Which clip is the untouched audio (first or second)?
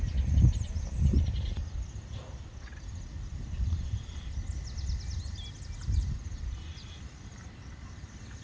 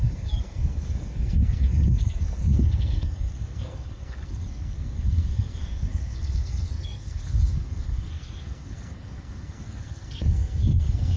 first